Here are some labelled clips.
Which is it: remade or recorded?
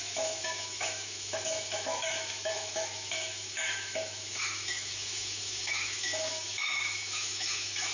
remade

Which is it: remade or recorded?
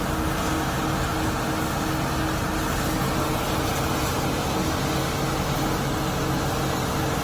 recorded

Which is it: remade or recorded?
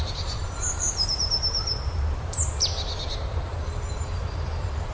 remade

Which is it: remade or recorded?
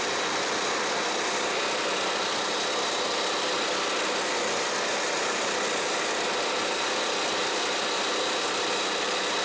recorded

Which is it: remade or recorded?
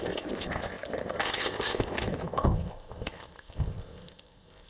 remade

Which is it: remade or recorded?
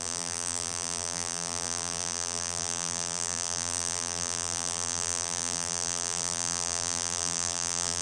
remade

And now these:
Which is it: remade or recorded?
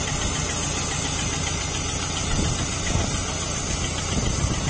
recorded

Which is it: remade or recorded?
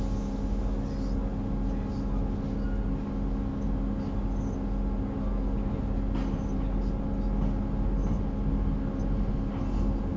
recorded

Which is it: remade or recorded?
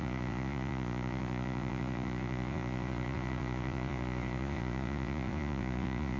remade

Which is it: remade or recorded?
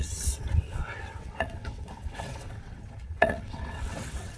remade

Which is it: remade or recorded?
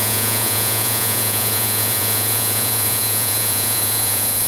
remade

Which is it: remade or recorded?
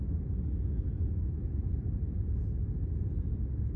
recorded